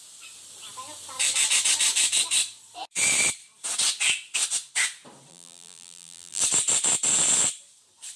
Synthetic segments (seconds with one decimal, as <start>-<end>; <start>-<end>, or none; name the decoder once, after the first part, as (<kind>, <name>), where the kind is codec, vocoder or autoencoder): 5.3-6.4 (vocoder, BigVGAN v2)